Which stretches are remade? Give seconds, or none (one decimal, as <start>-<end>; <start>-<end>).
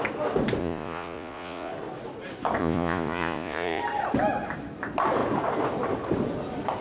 0.6-1.7; 2.6-3.8